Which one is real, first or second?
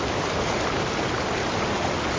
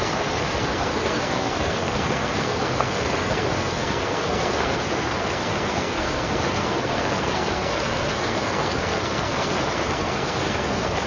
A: first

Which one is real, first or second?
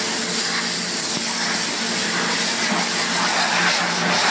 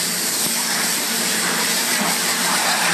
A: first